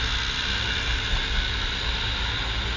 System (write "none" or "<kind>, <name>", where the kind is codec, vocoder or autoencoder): none